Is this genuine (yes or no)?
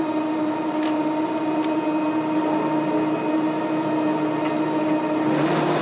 yes